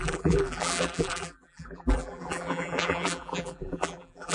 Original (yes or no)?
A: no